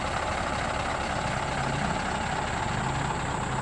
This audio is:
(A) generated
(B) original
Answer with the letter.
B